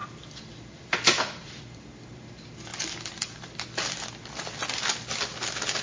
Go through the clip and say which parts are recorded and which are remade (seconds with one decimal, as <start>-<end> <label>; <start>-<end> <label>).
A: 0.0-2.3 remade; 2.3-5.8 recorded